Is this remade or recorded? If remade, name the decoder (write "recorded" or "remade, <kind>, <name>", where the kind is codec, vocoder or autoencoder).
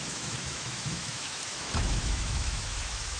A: remade, autoencoder, DAC-VAE